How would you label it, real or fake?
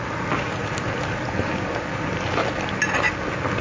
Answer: real